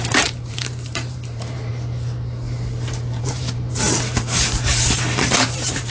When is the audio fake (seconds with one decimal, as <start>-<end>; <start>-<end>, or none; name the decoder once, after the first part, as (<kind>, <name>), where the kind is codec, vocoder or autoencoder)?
0.0-1.7 (vocoder, BigVGAN v2); 3.2-5.9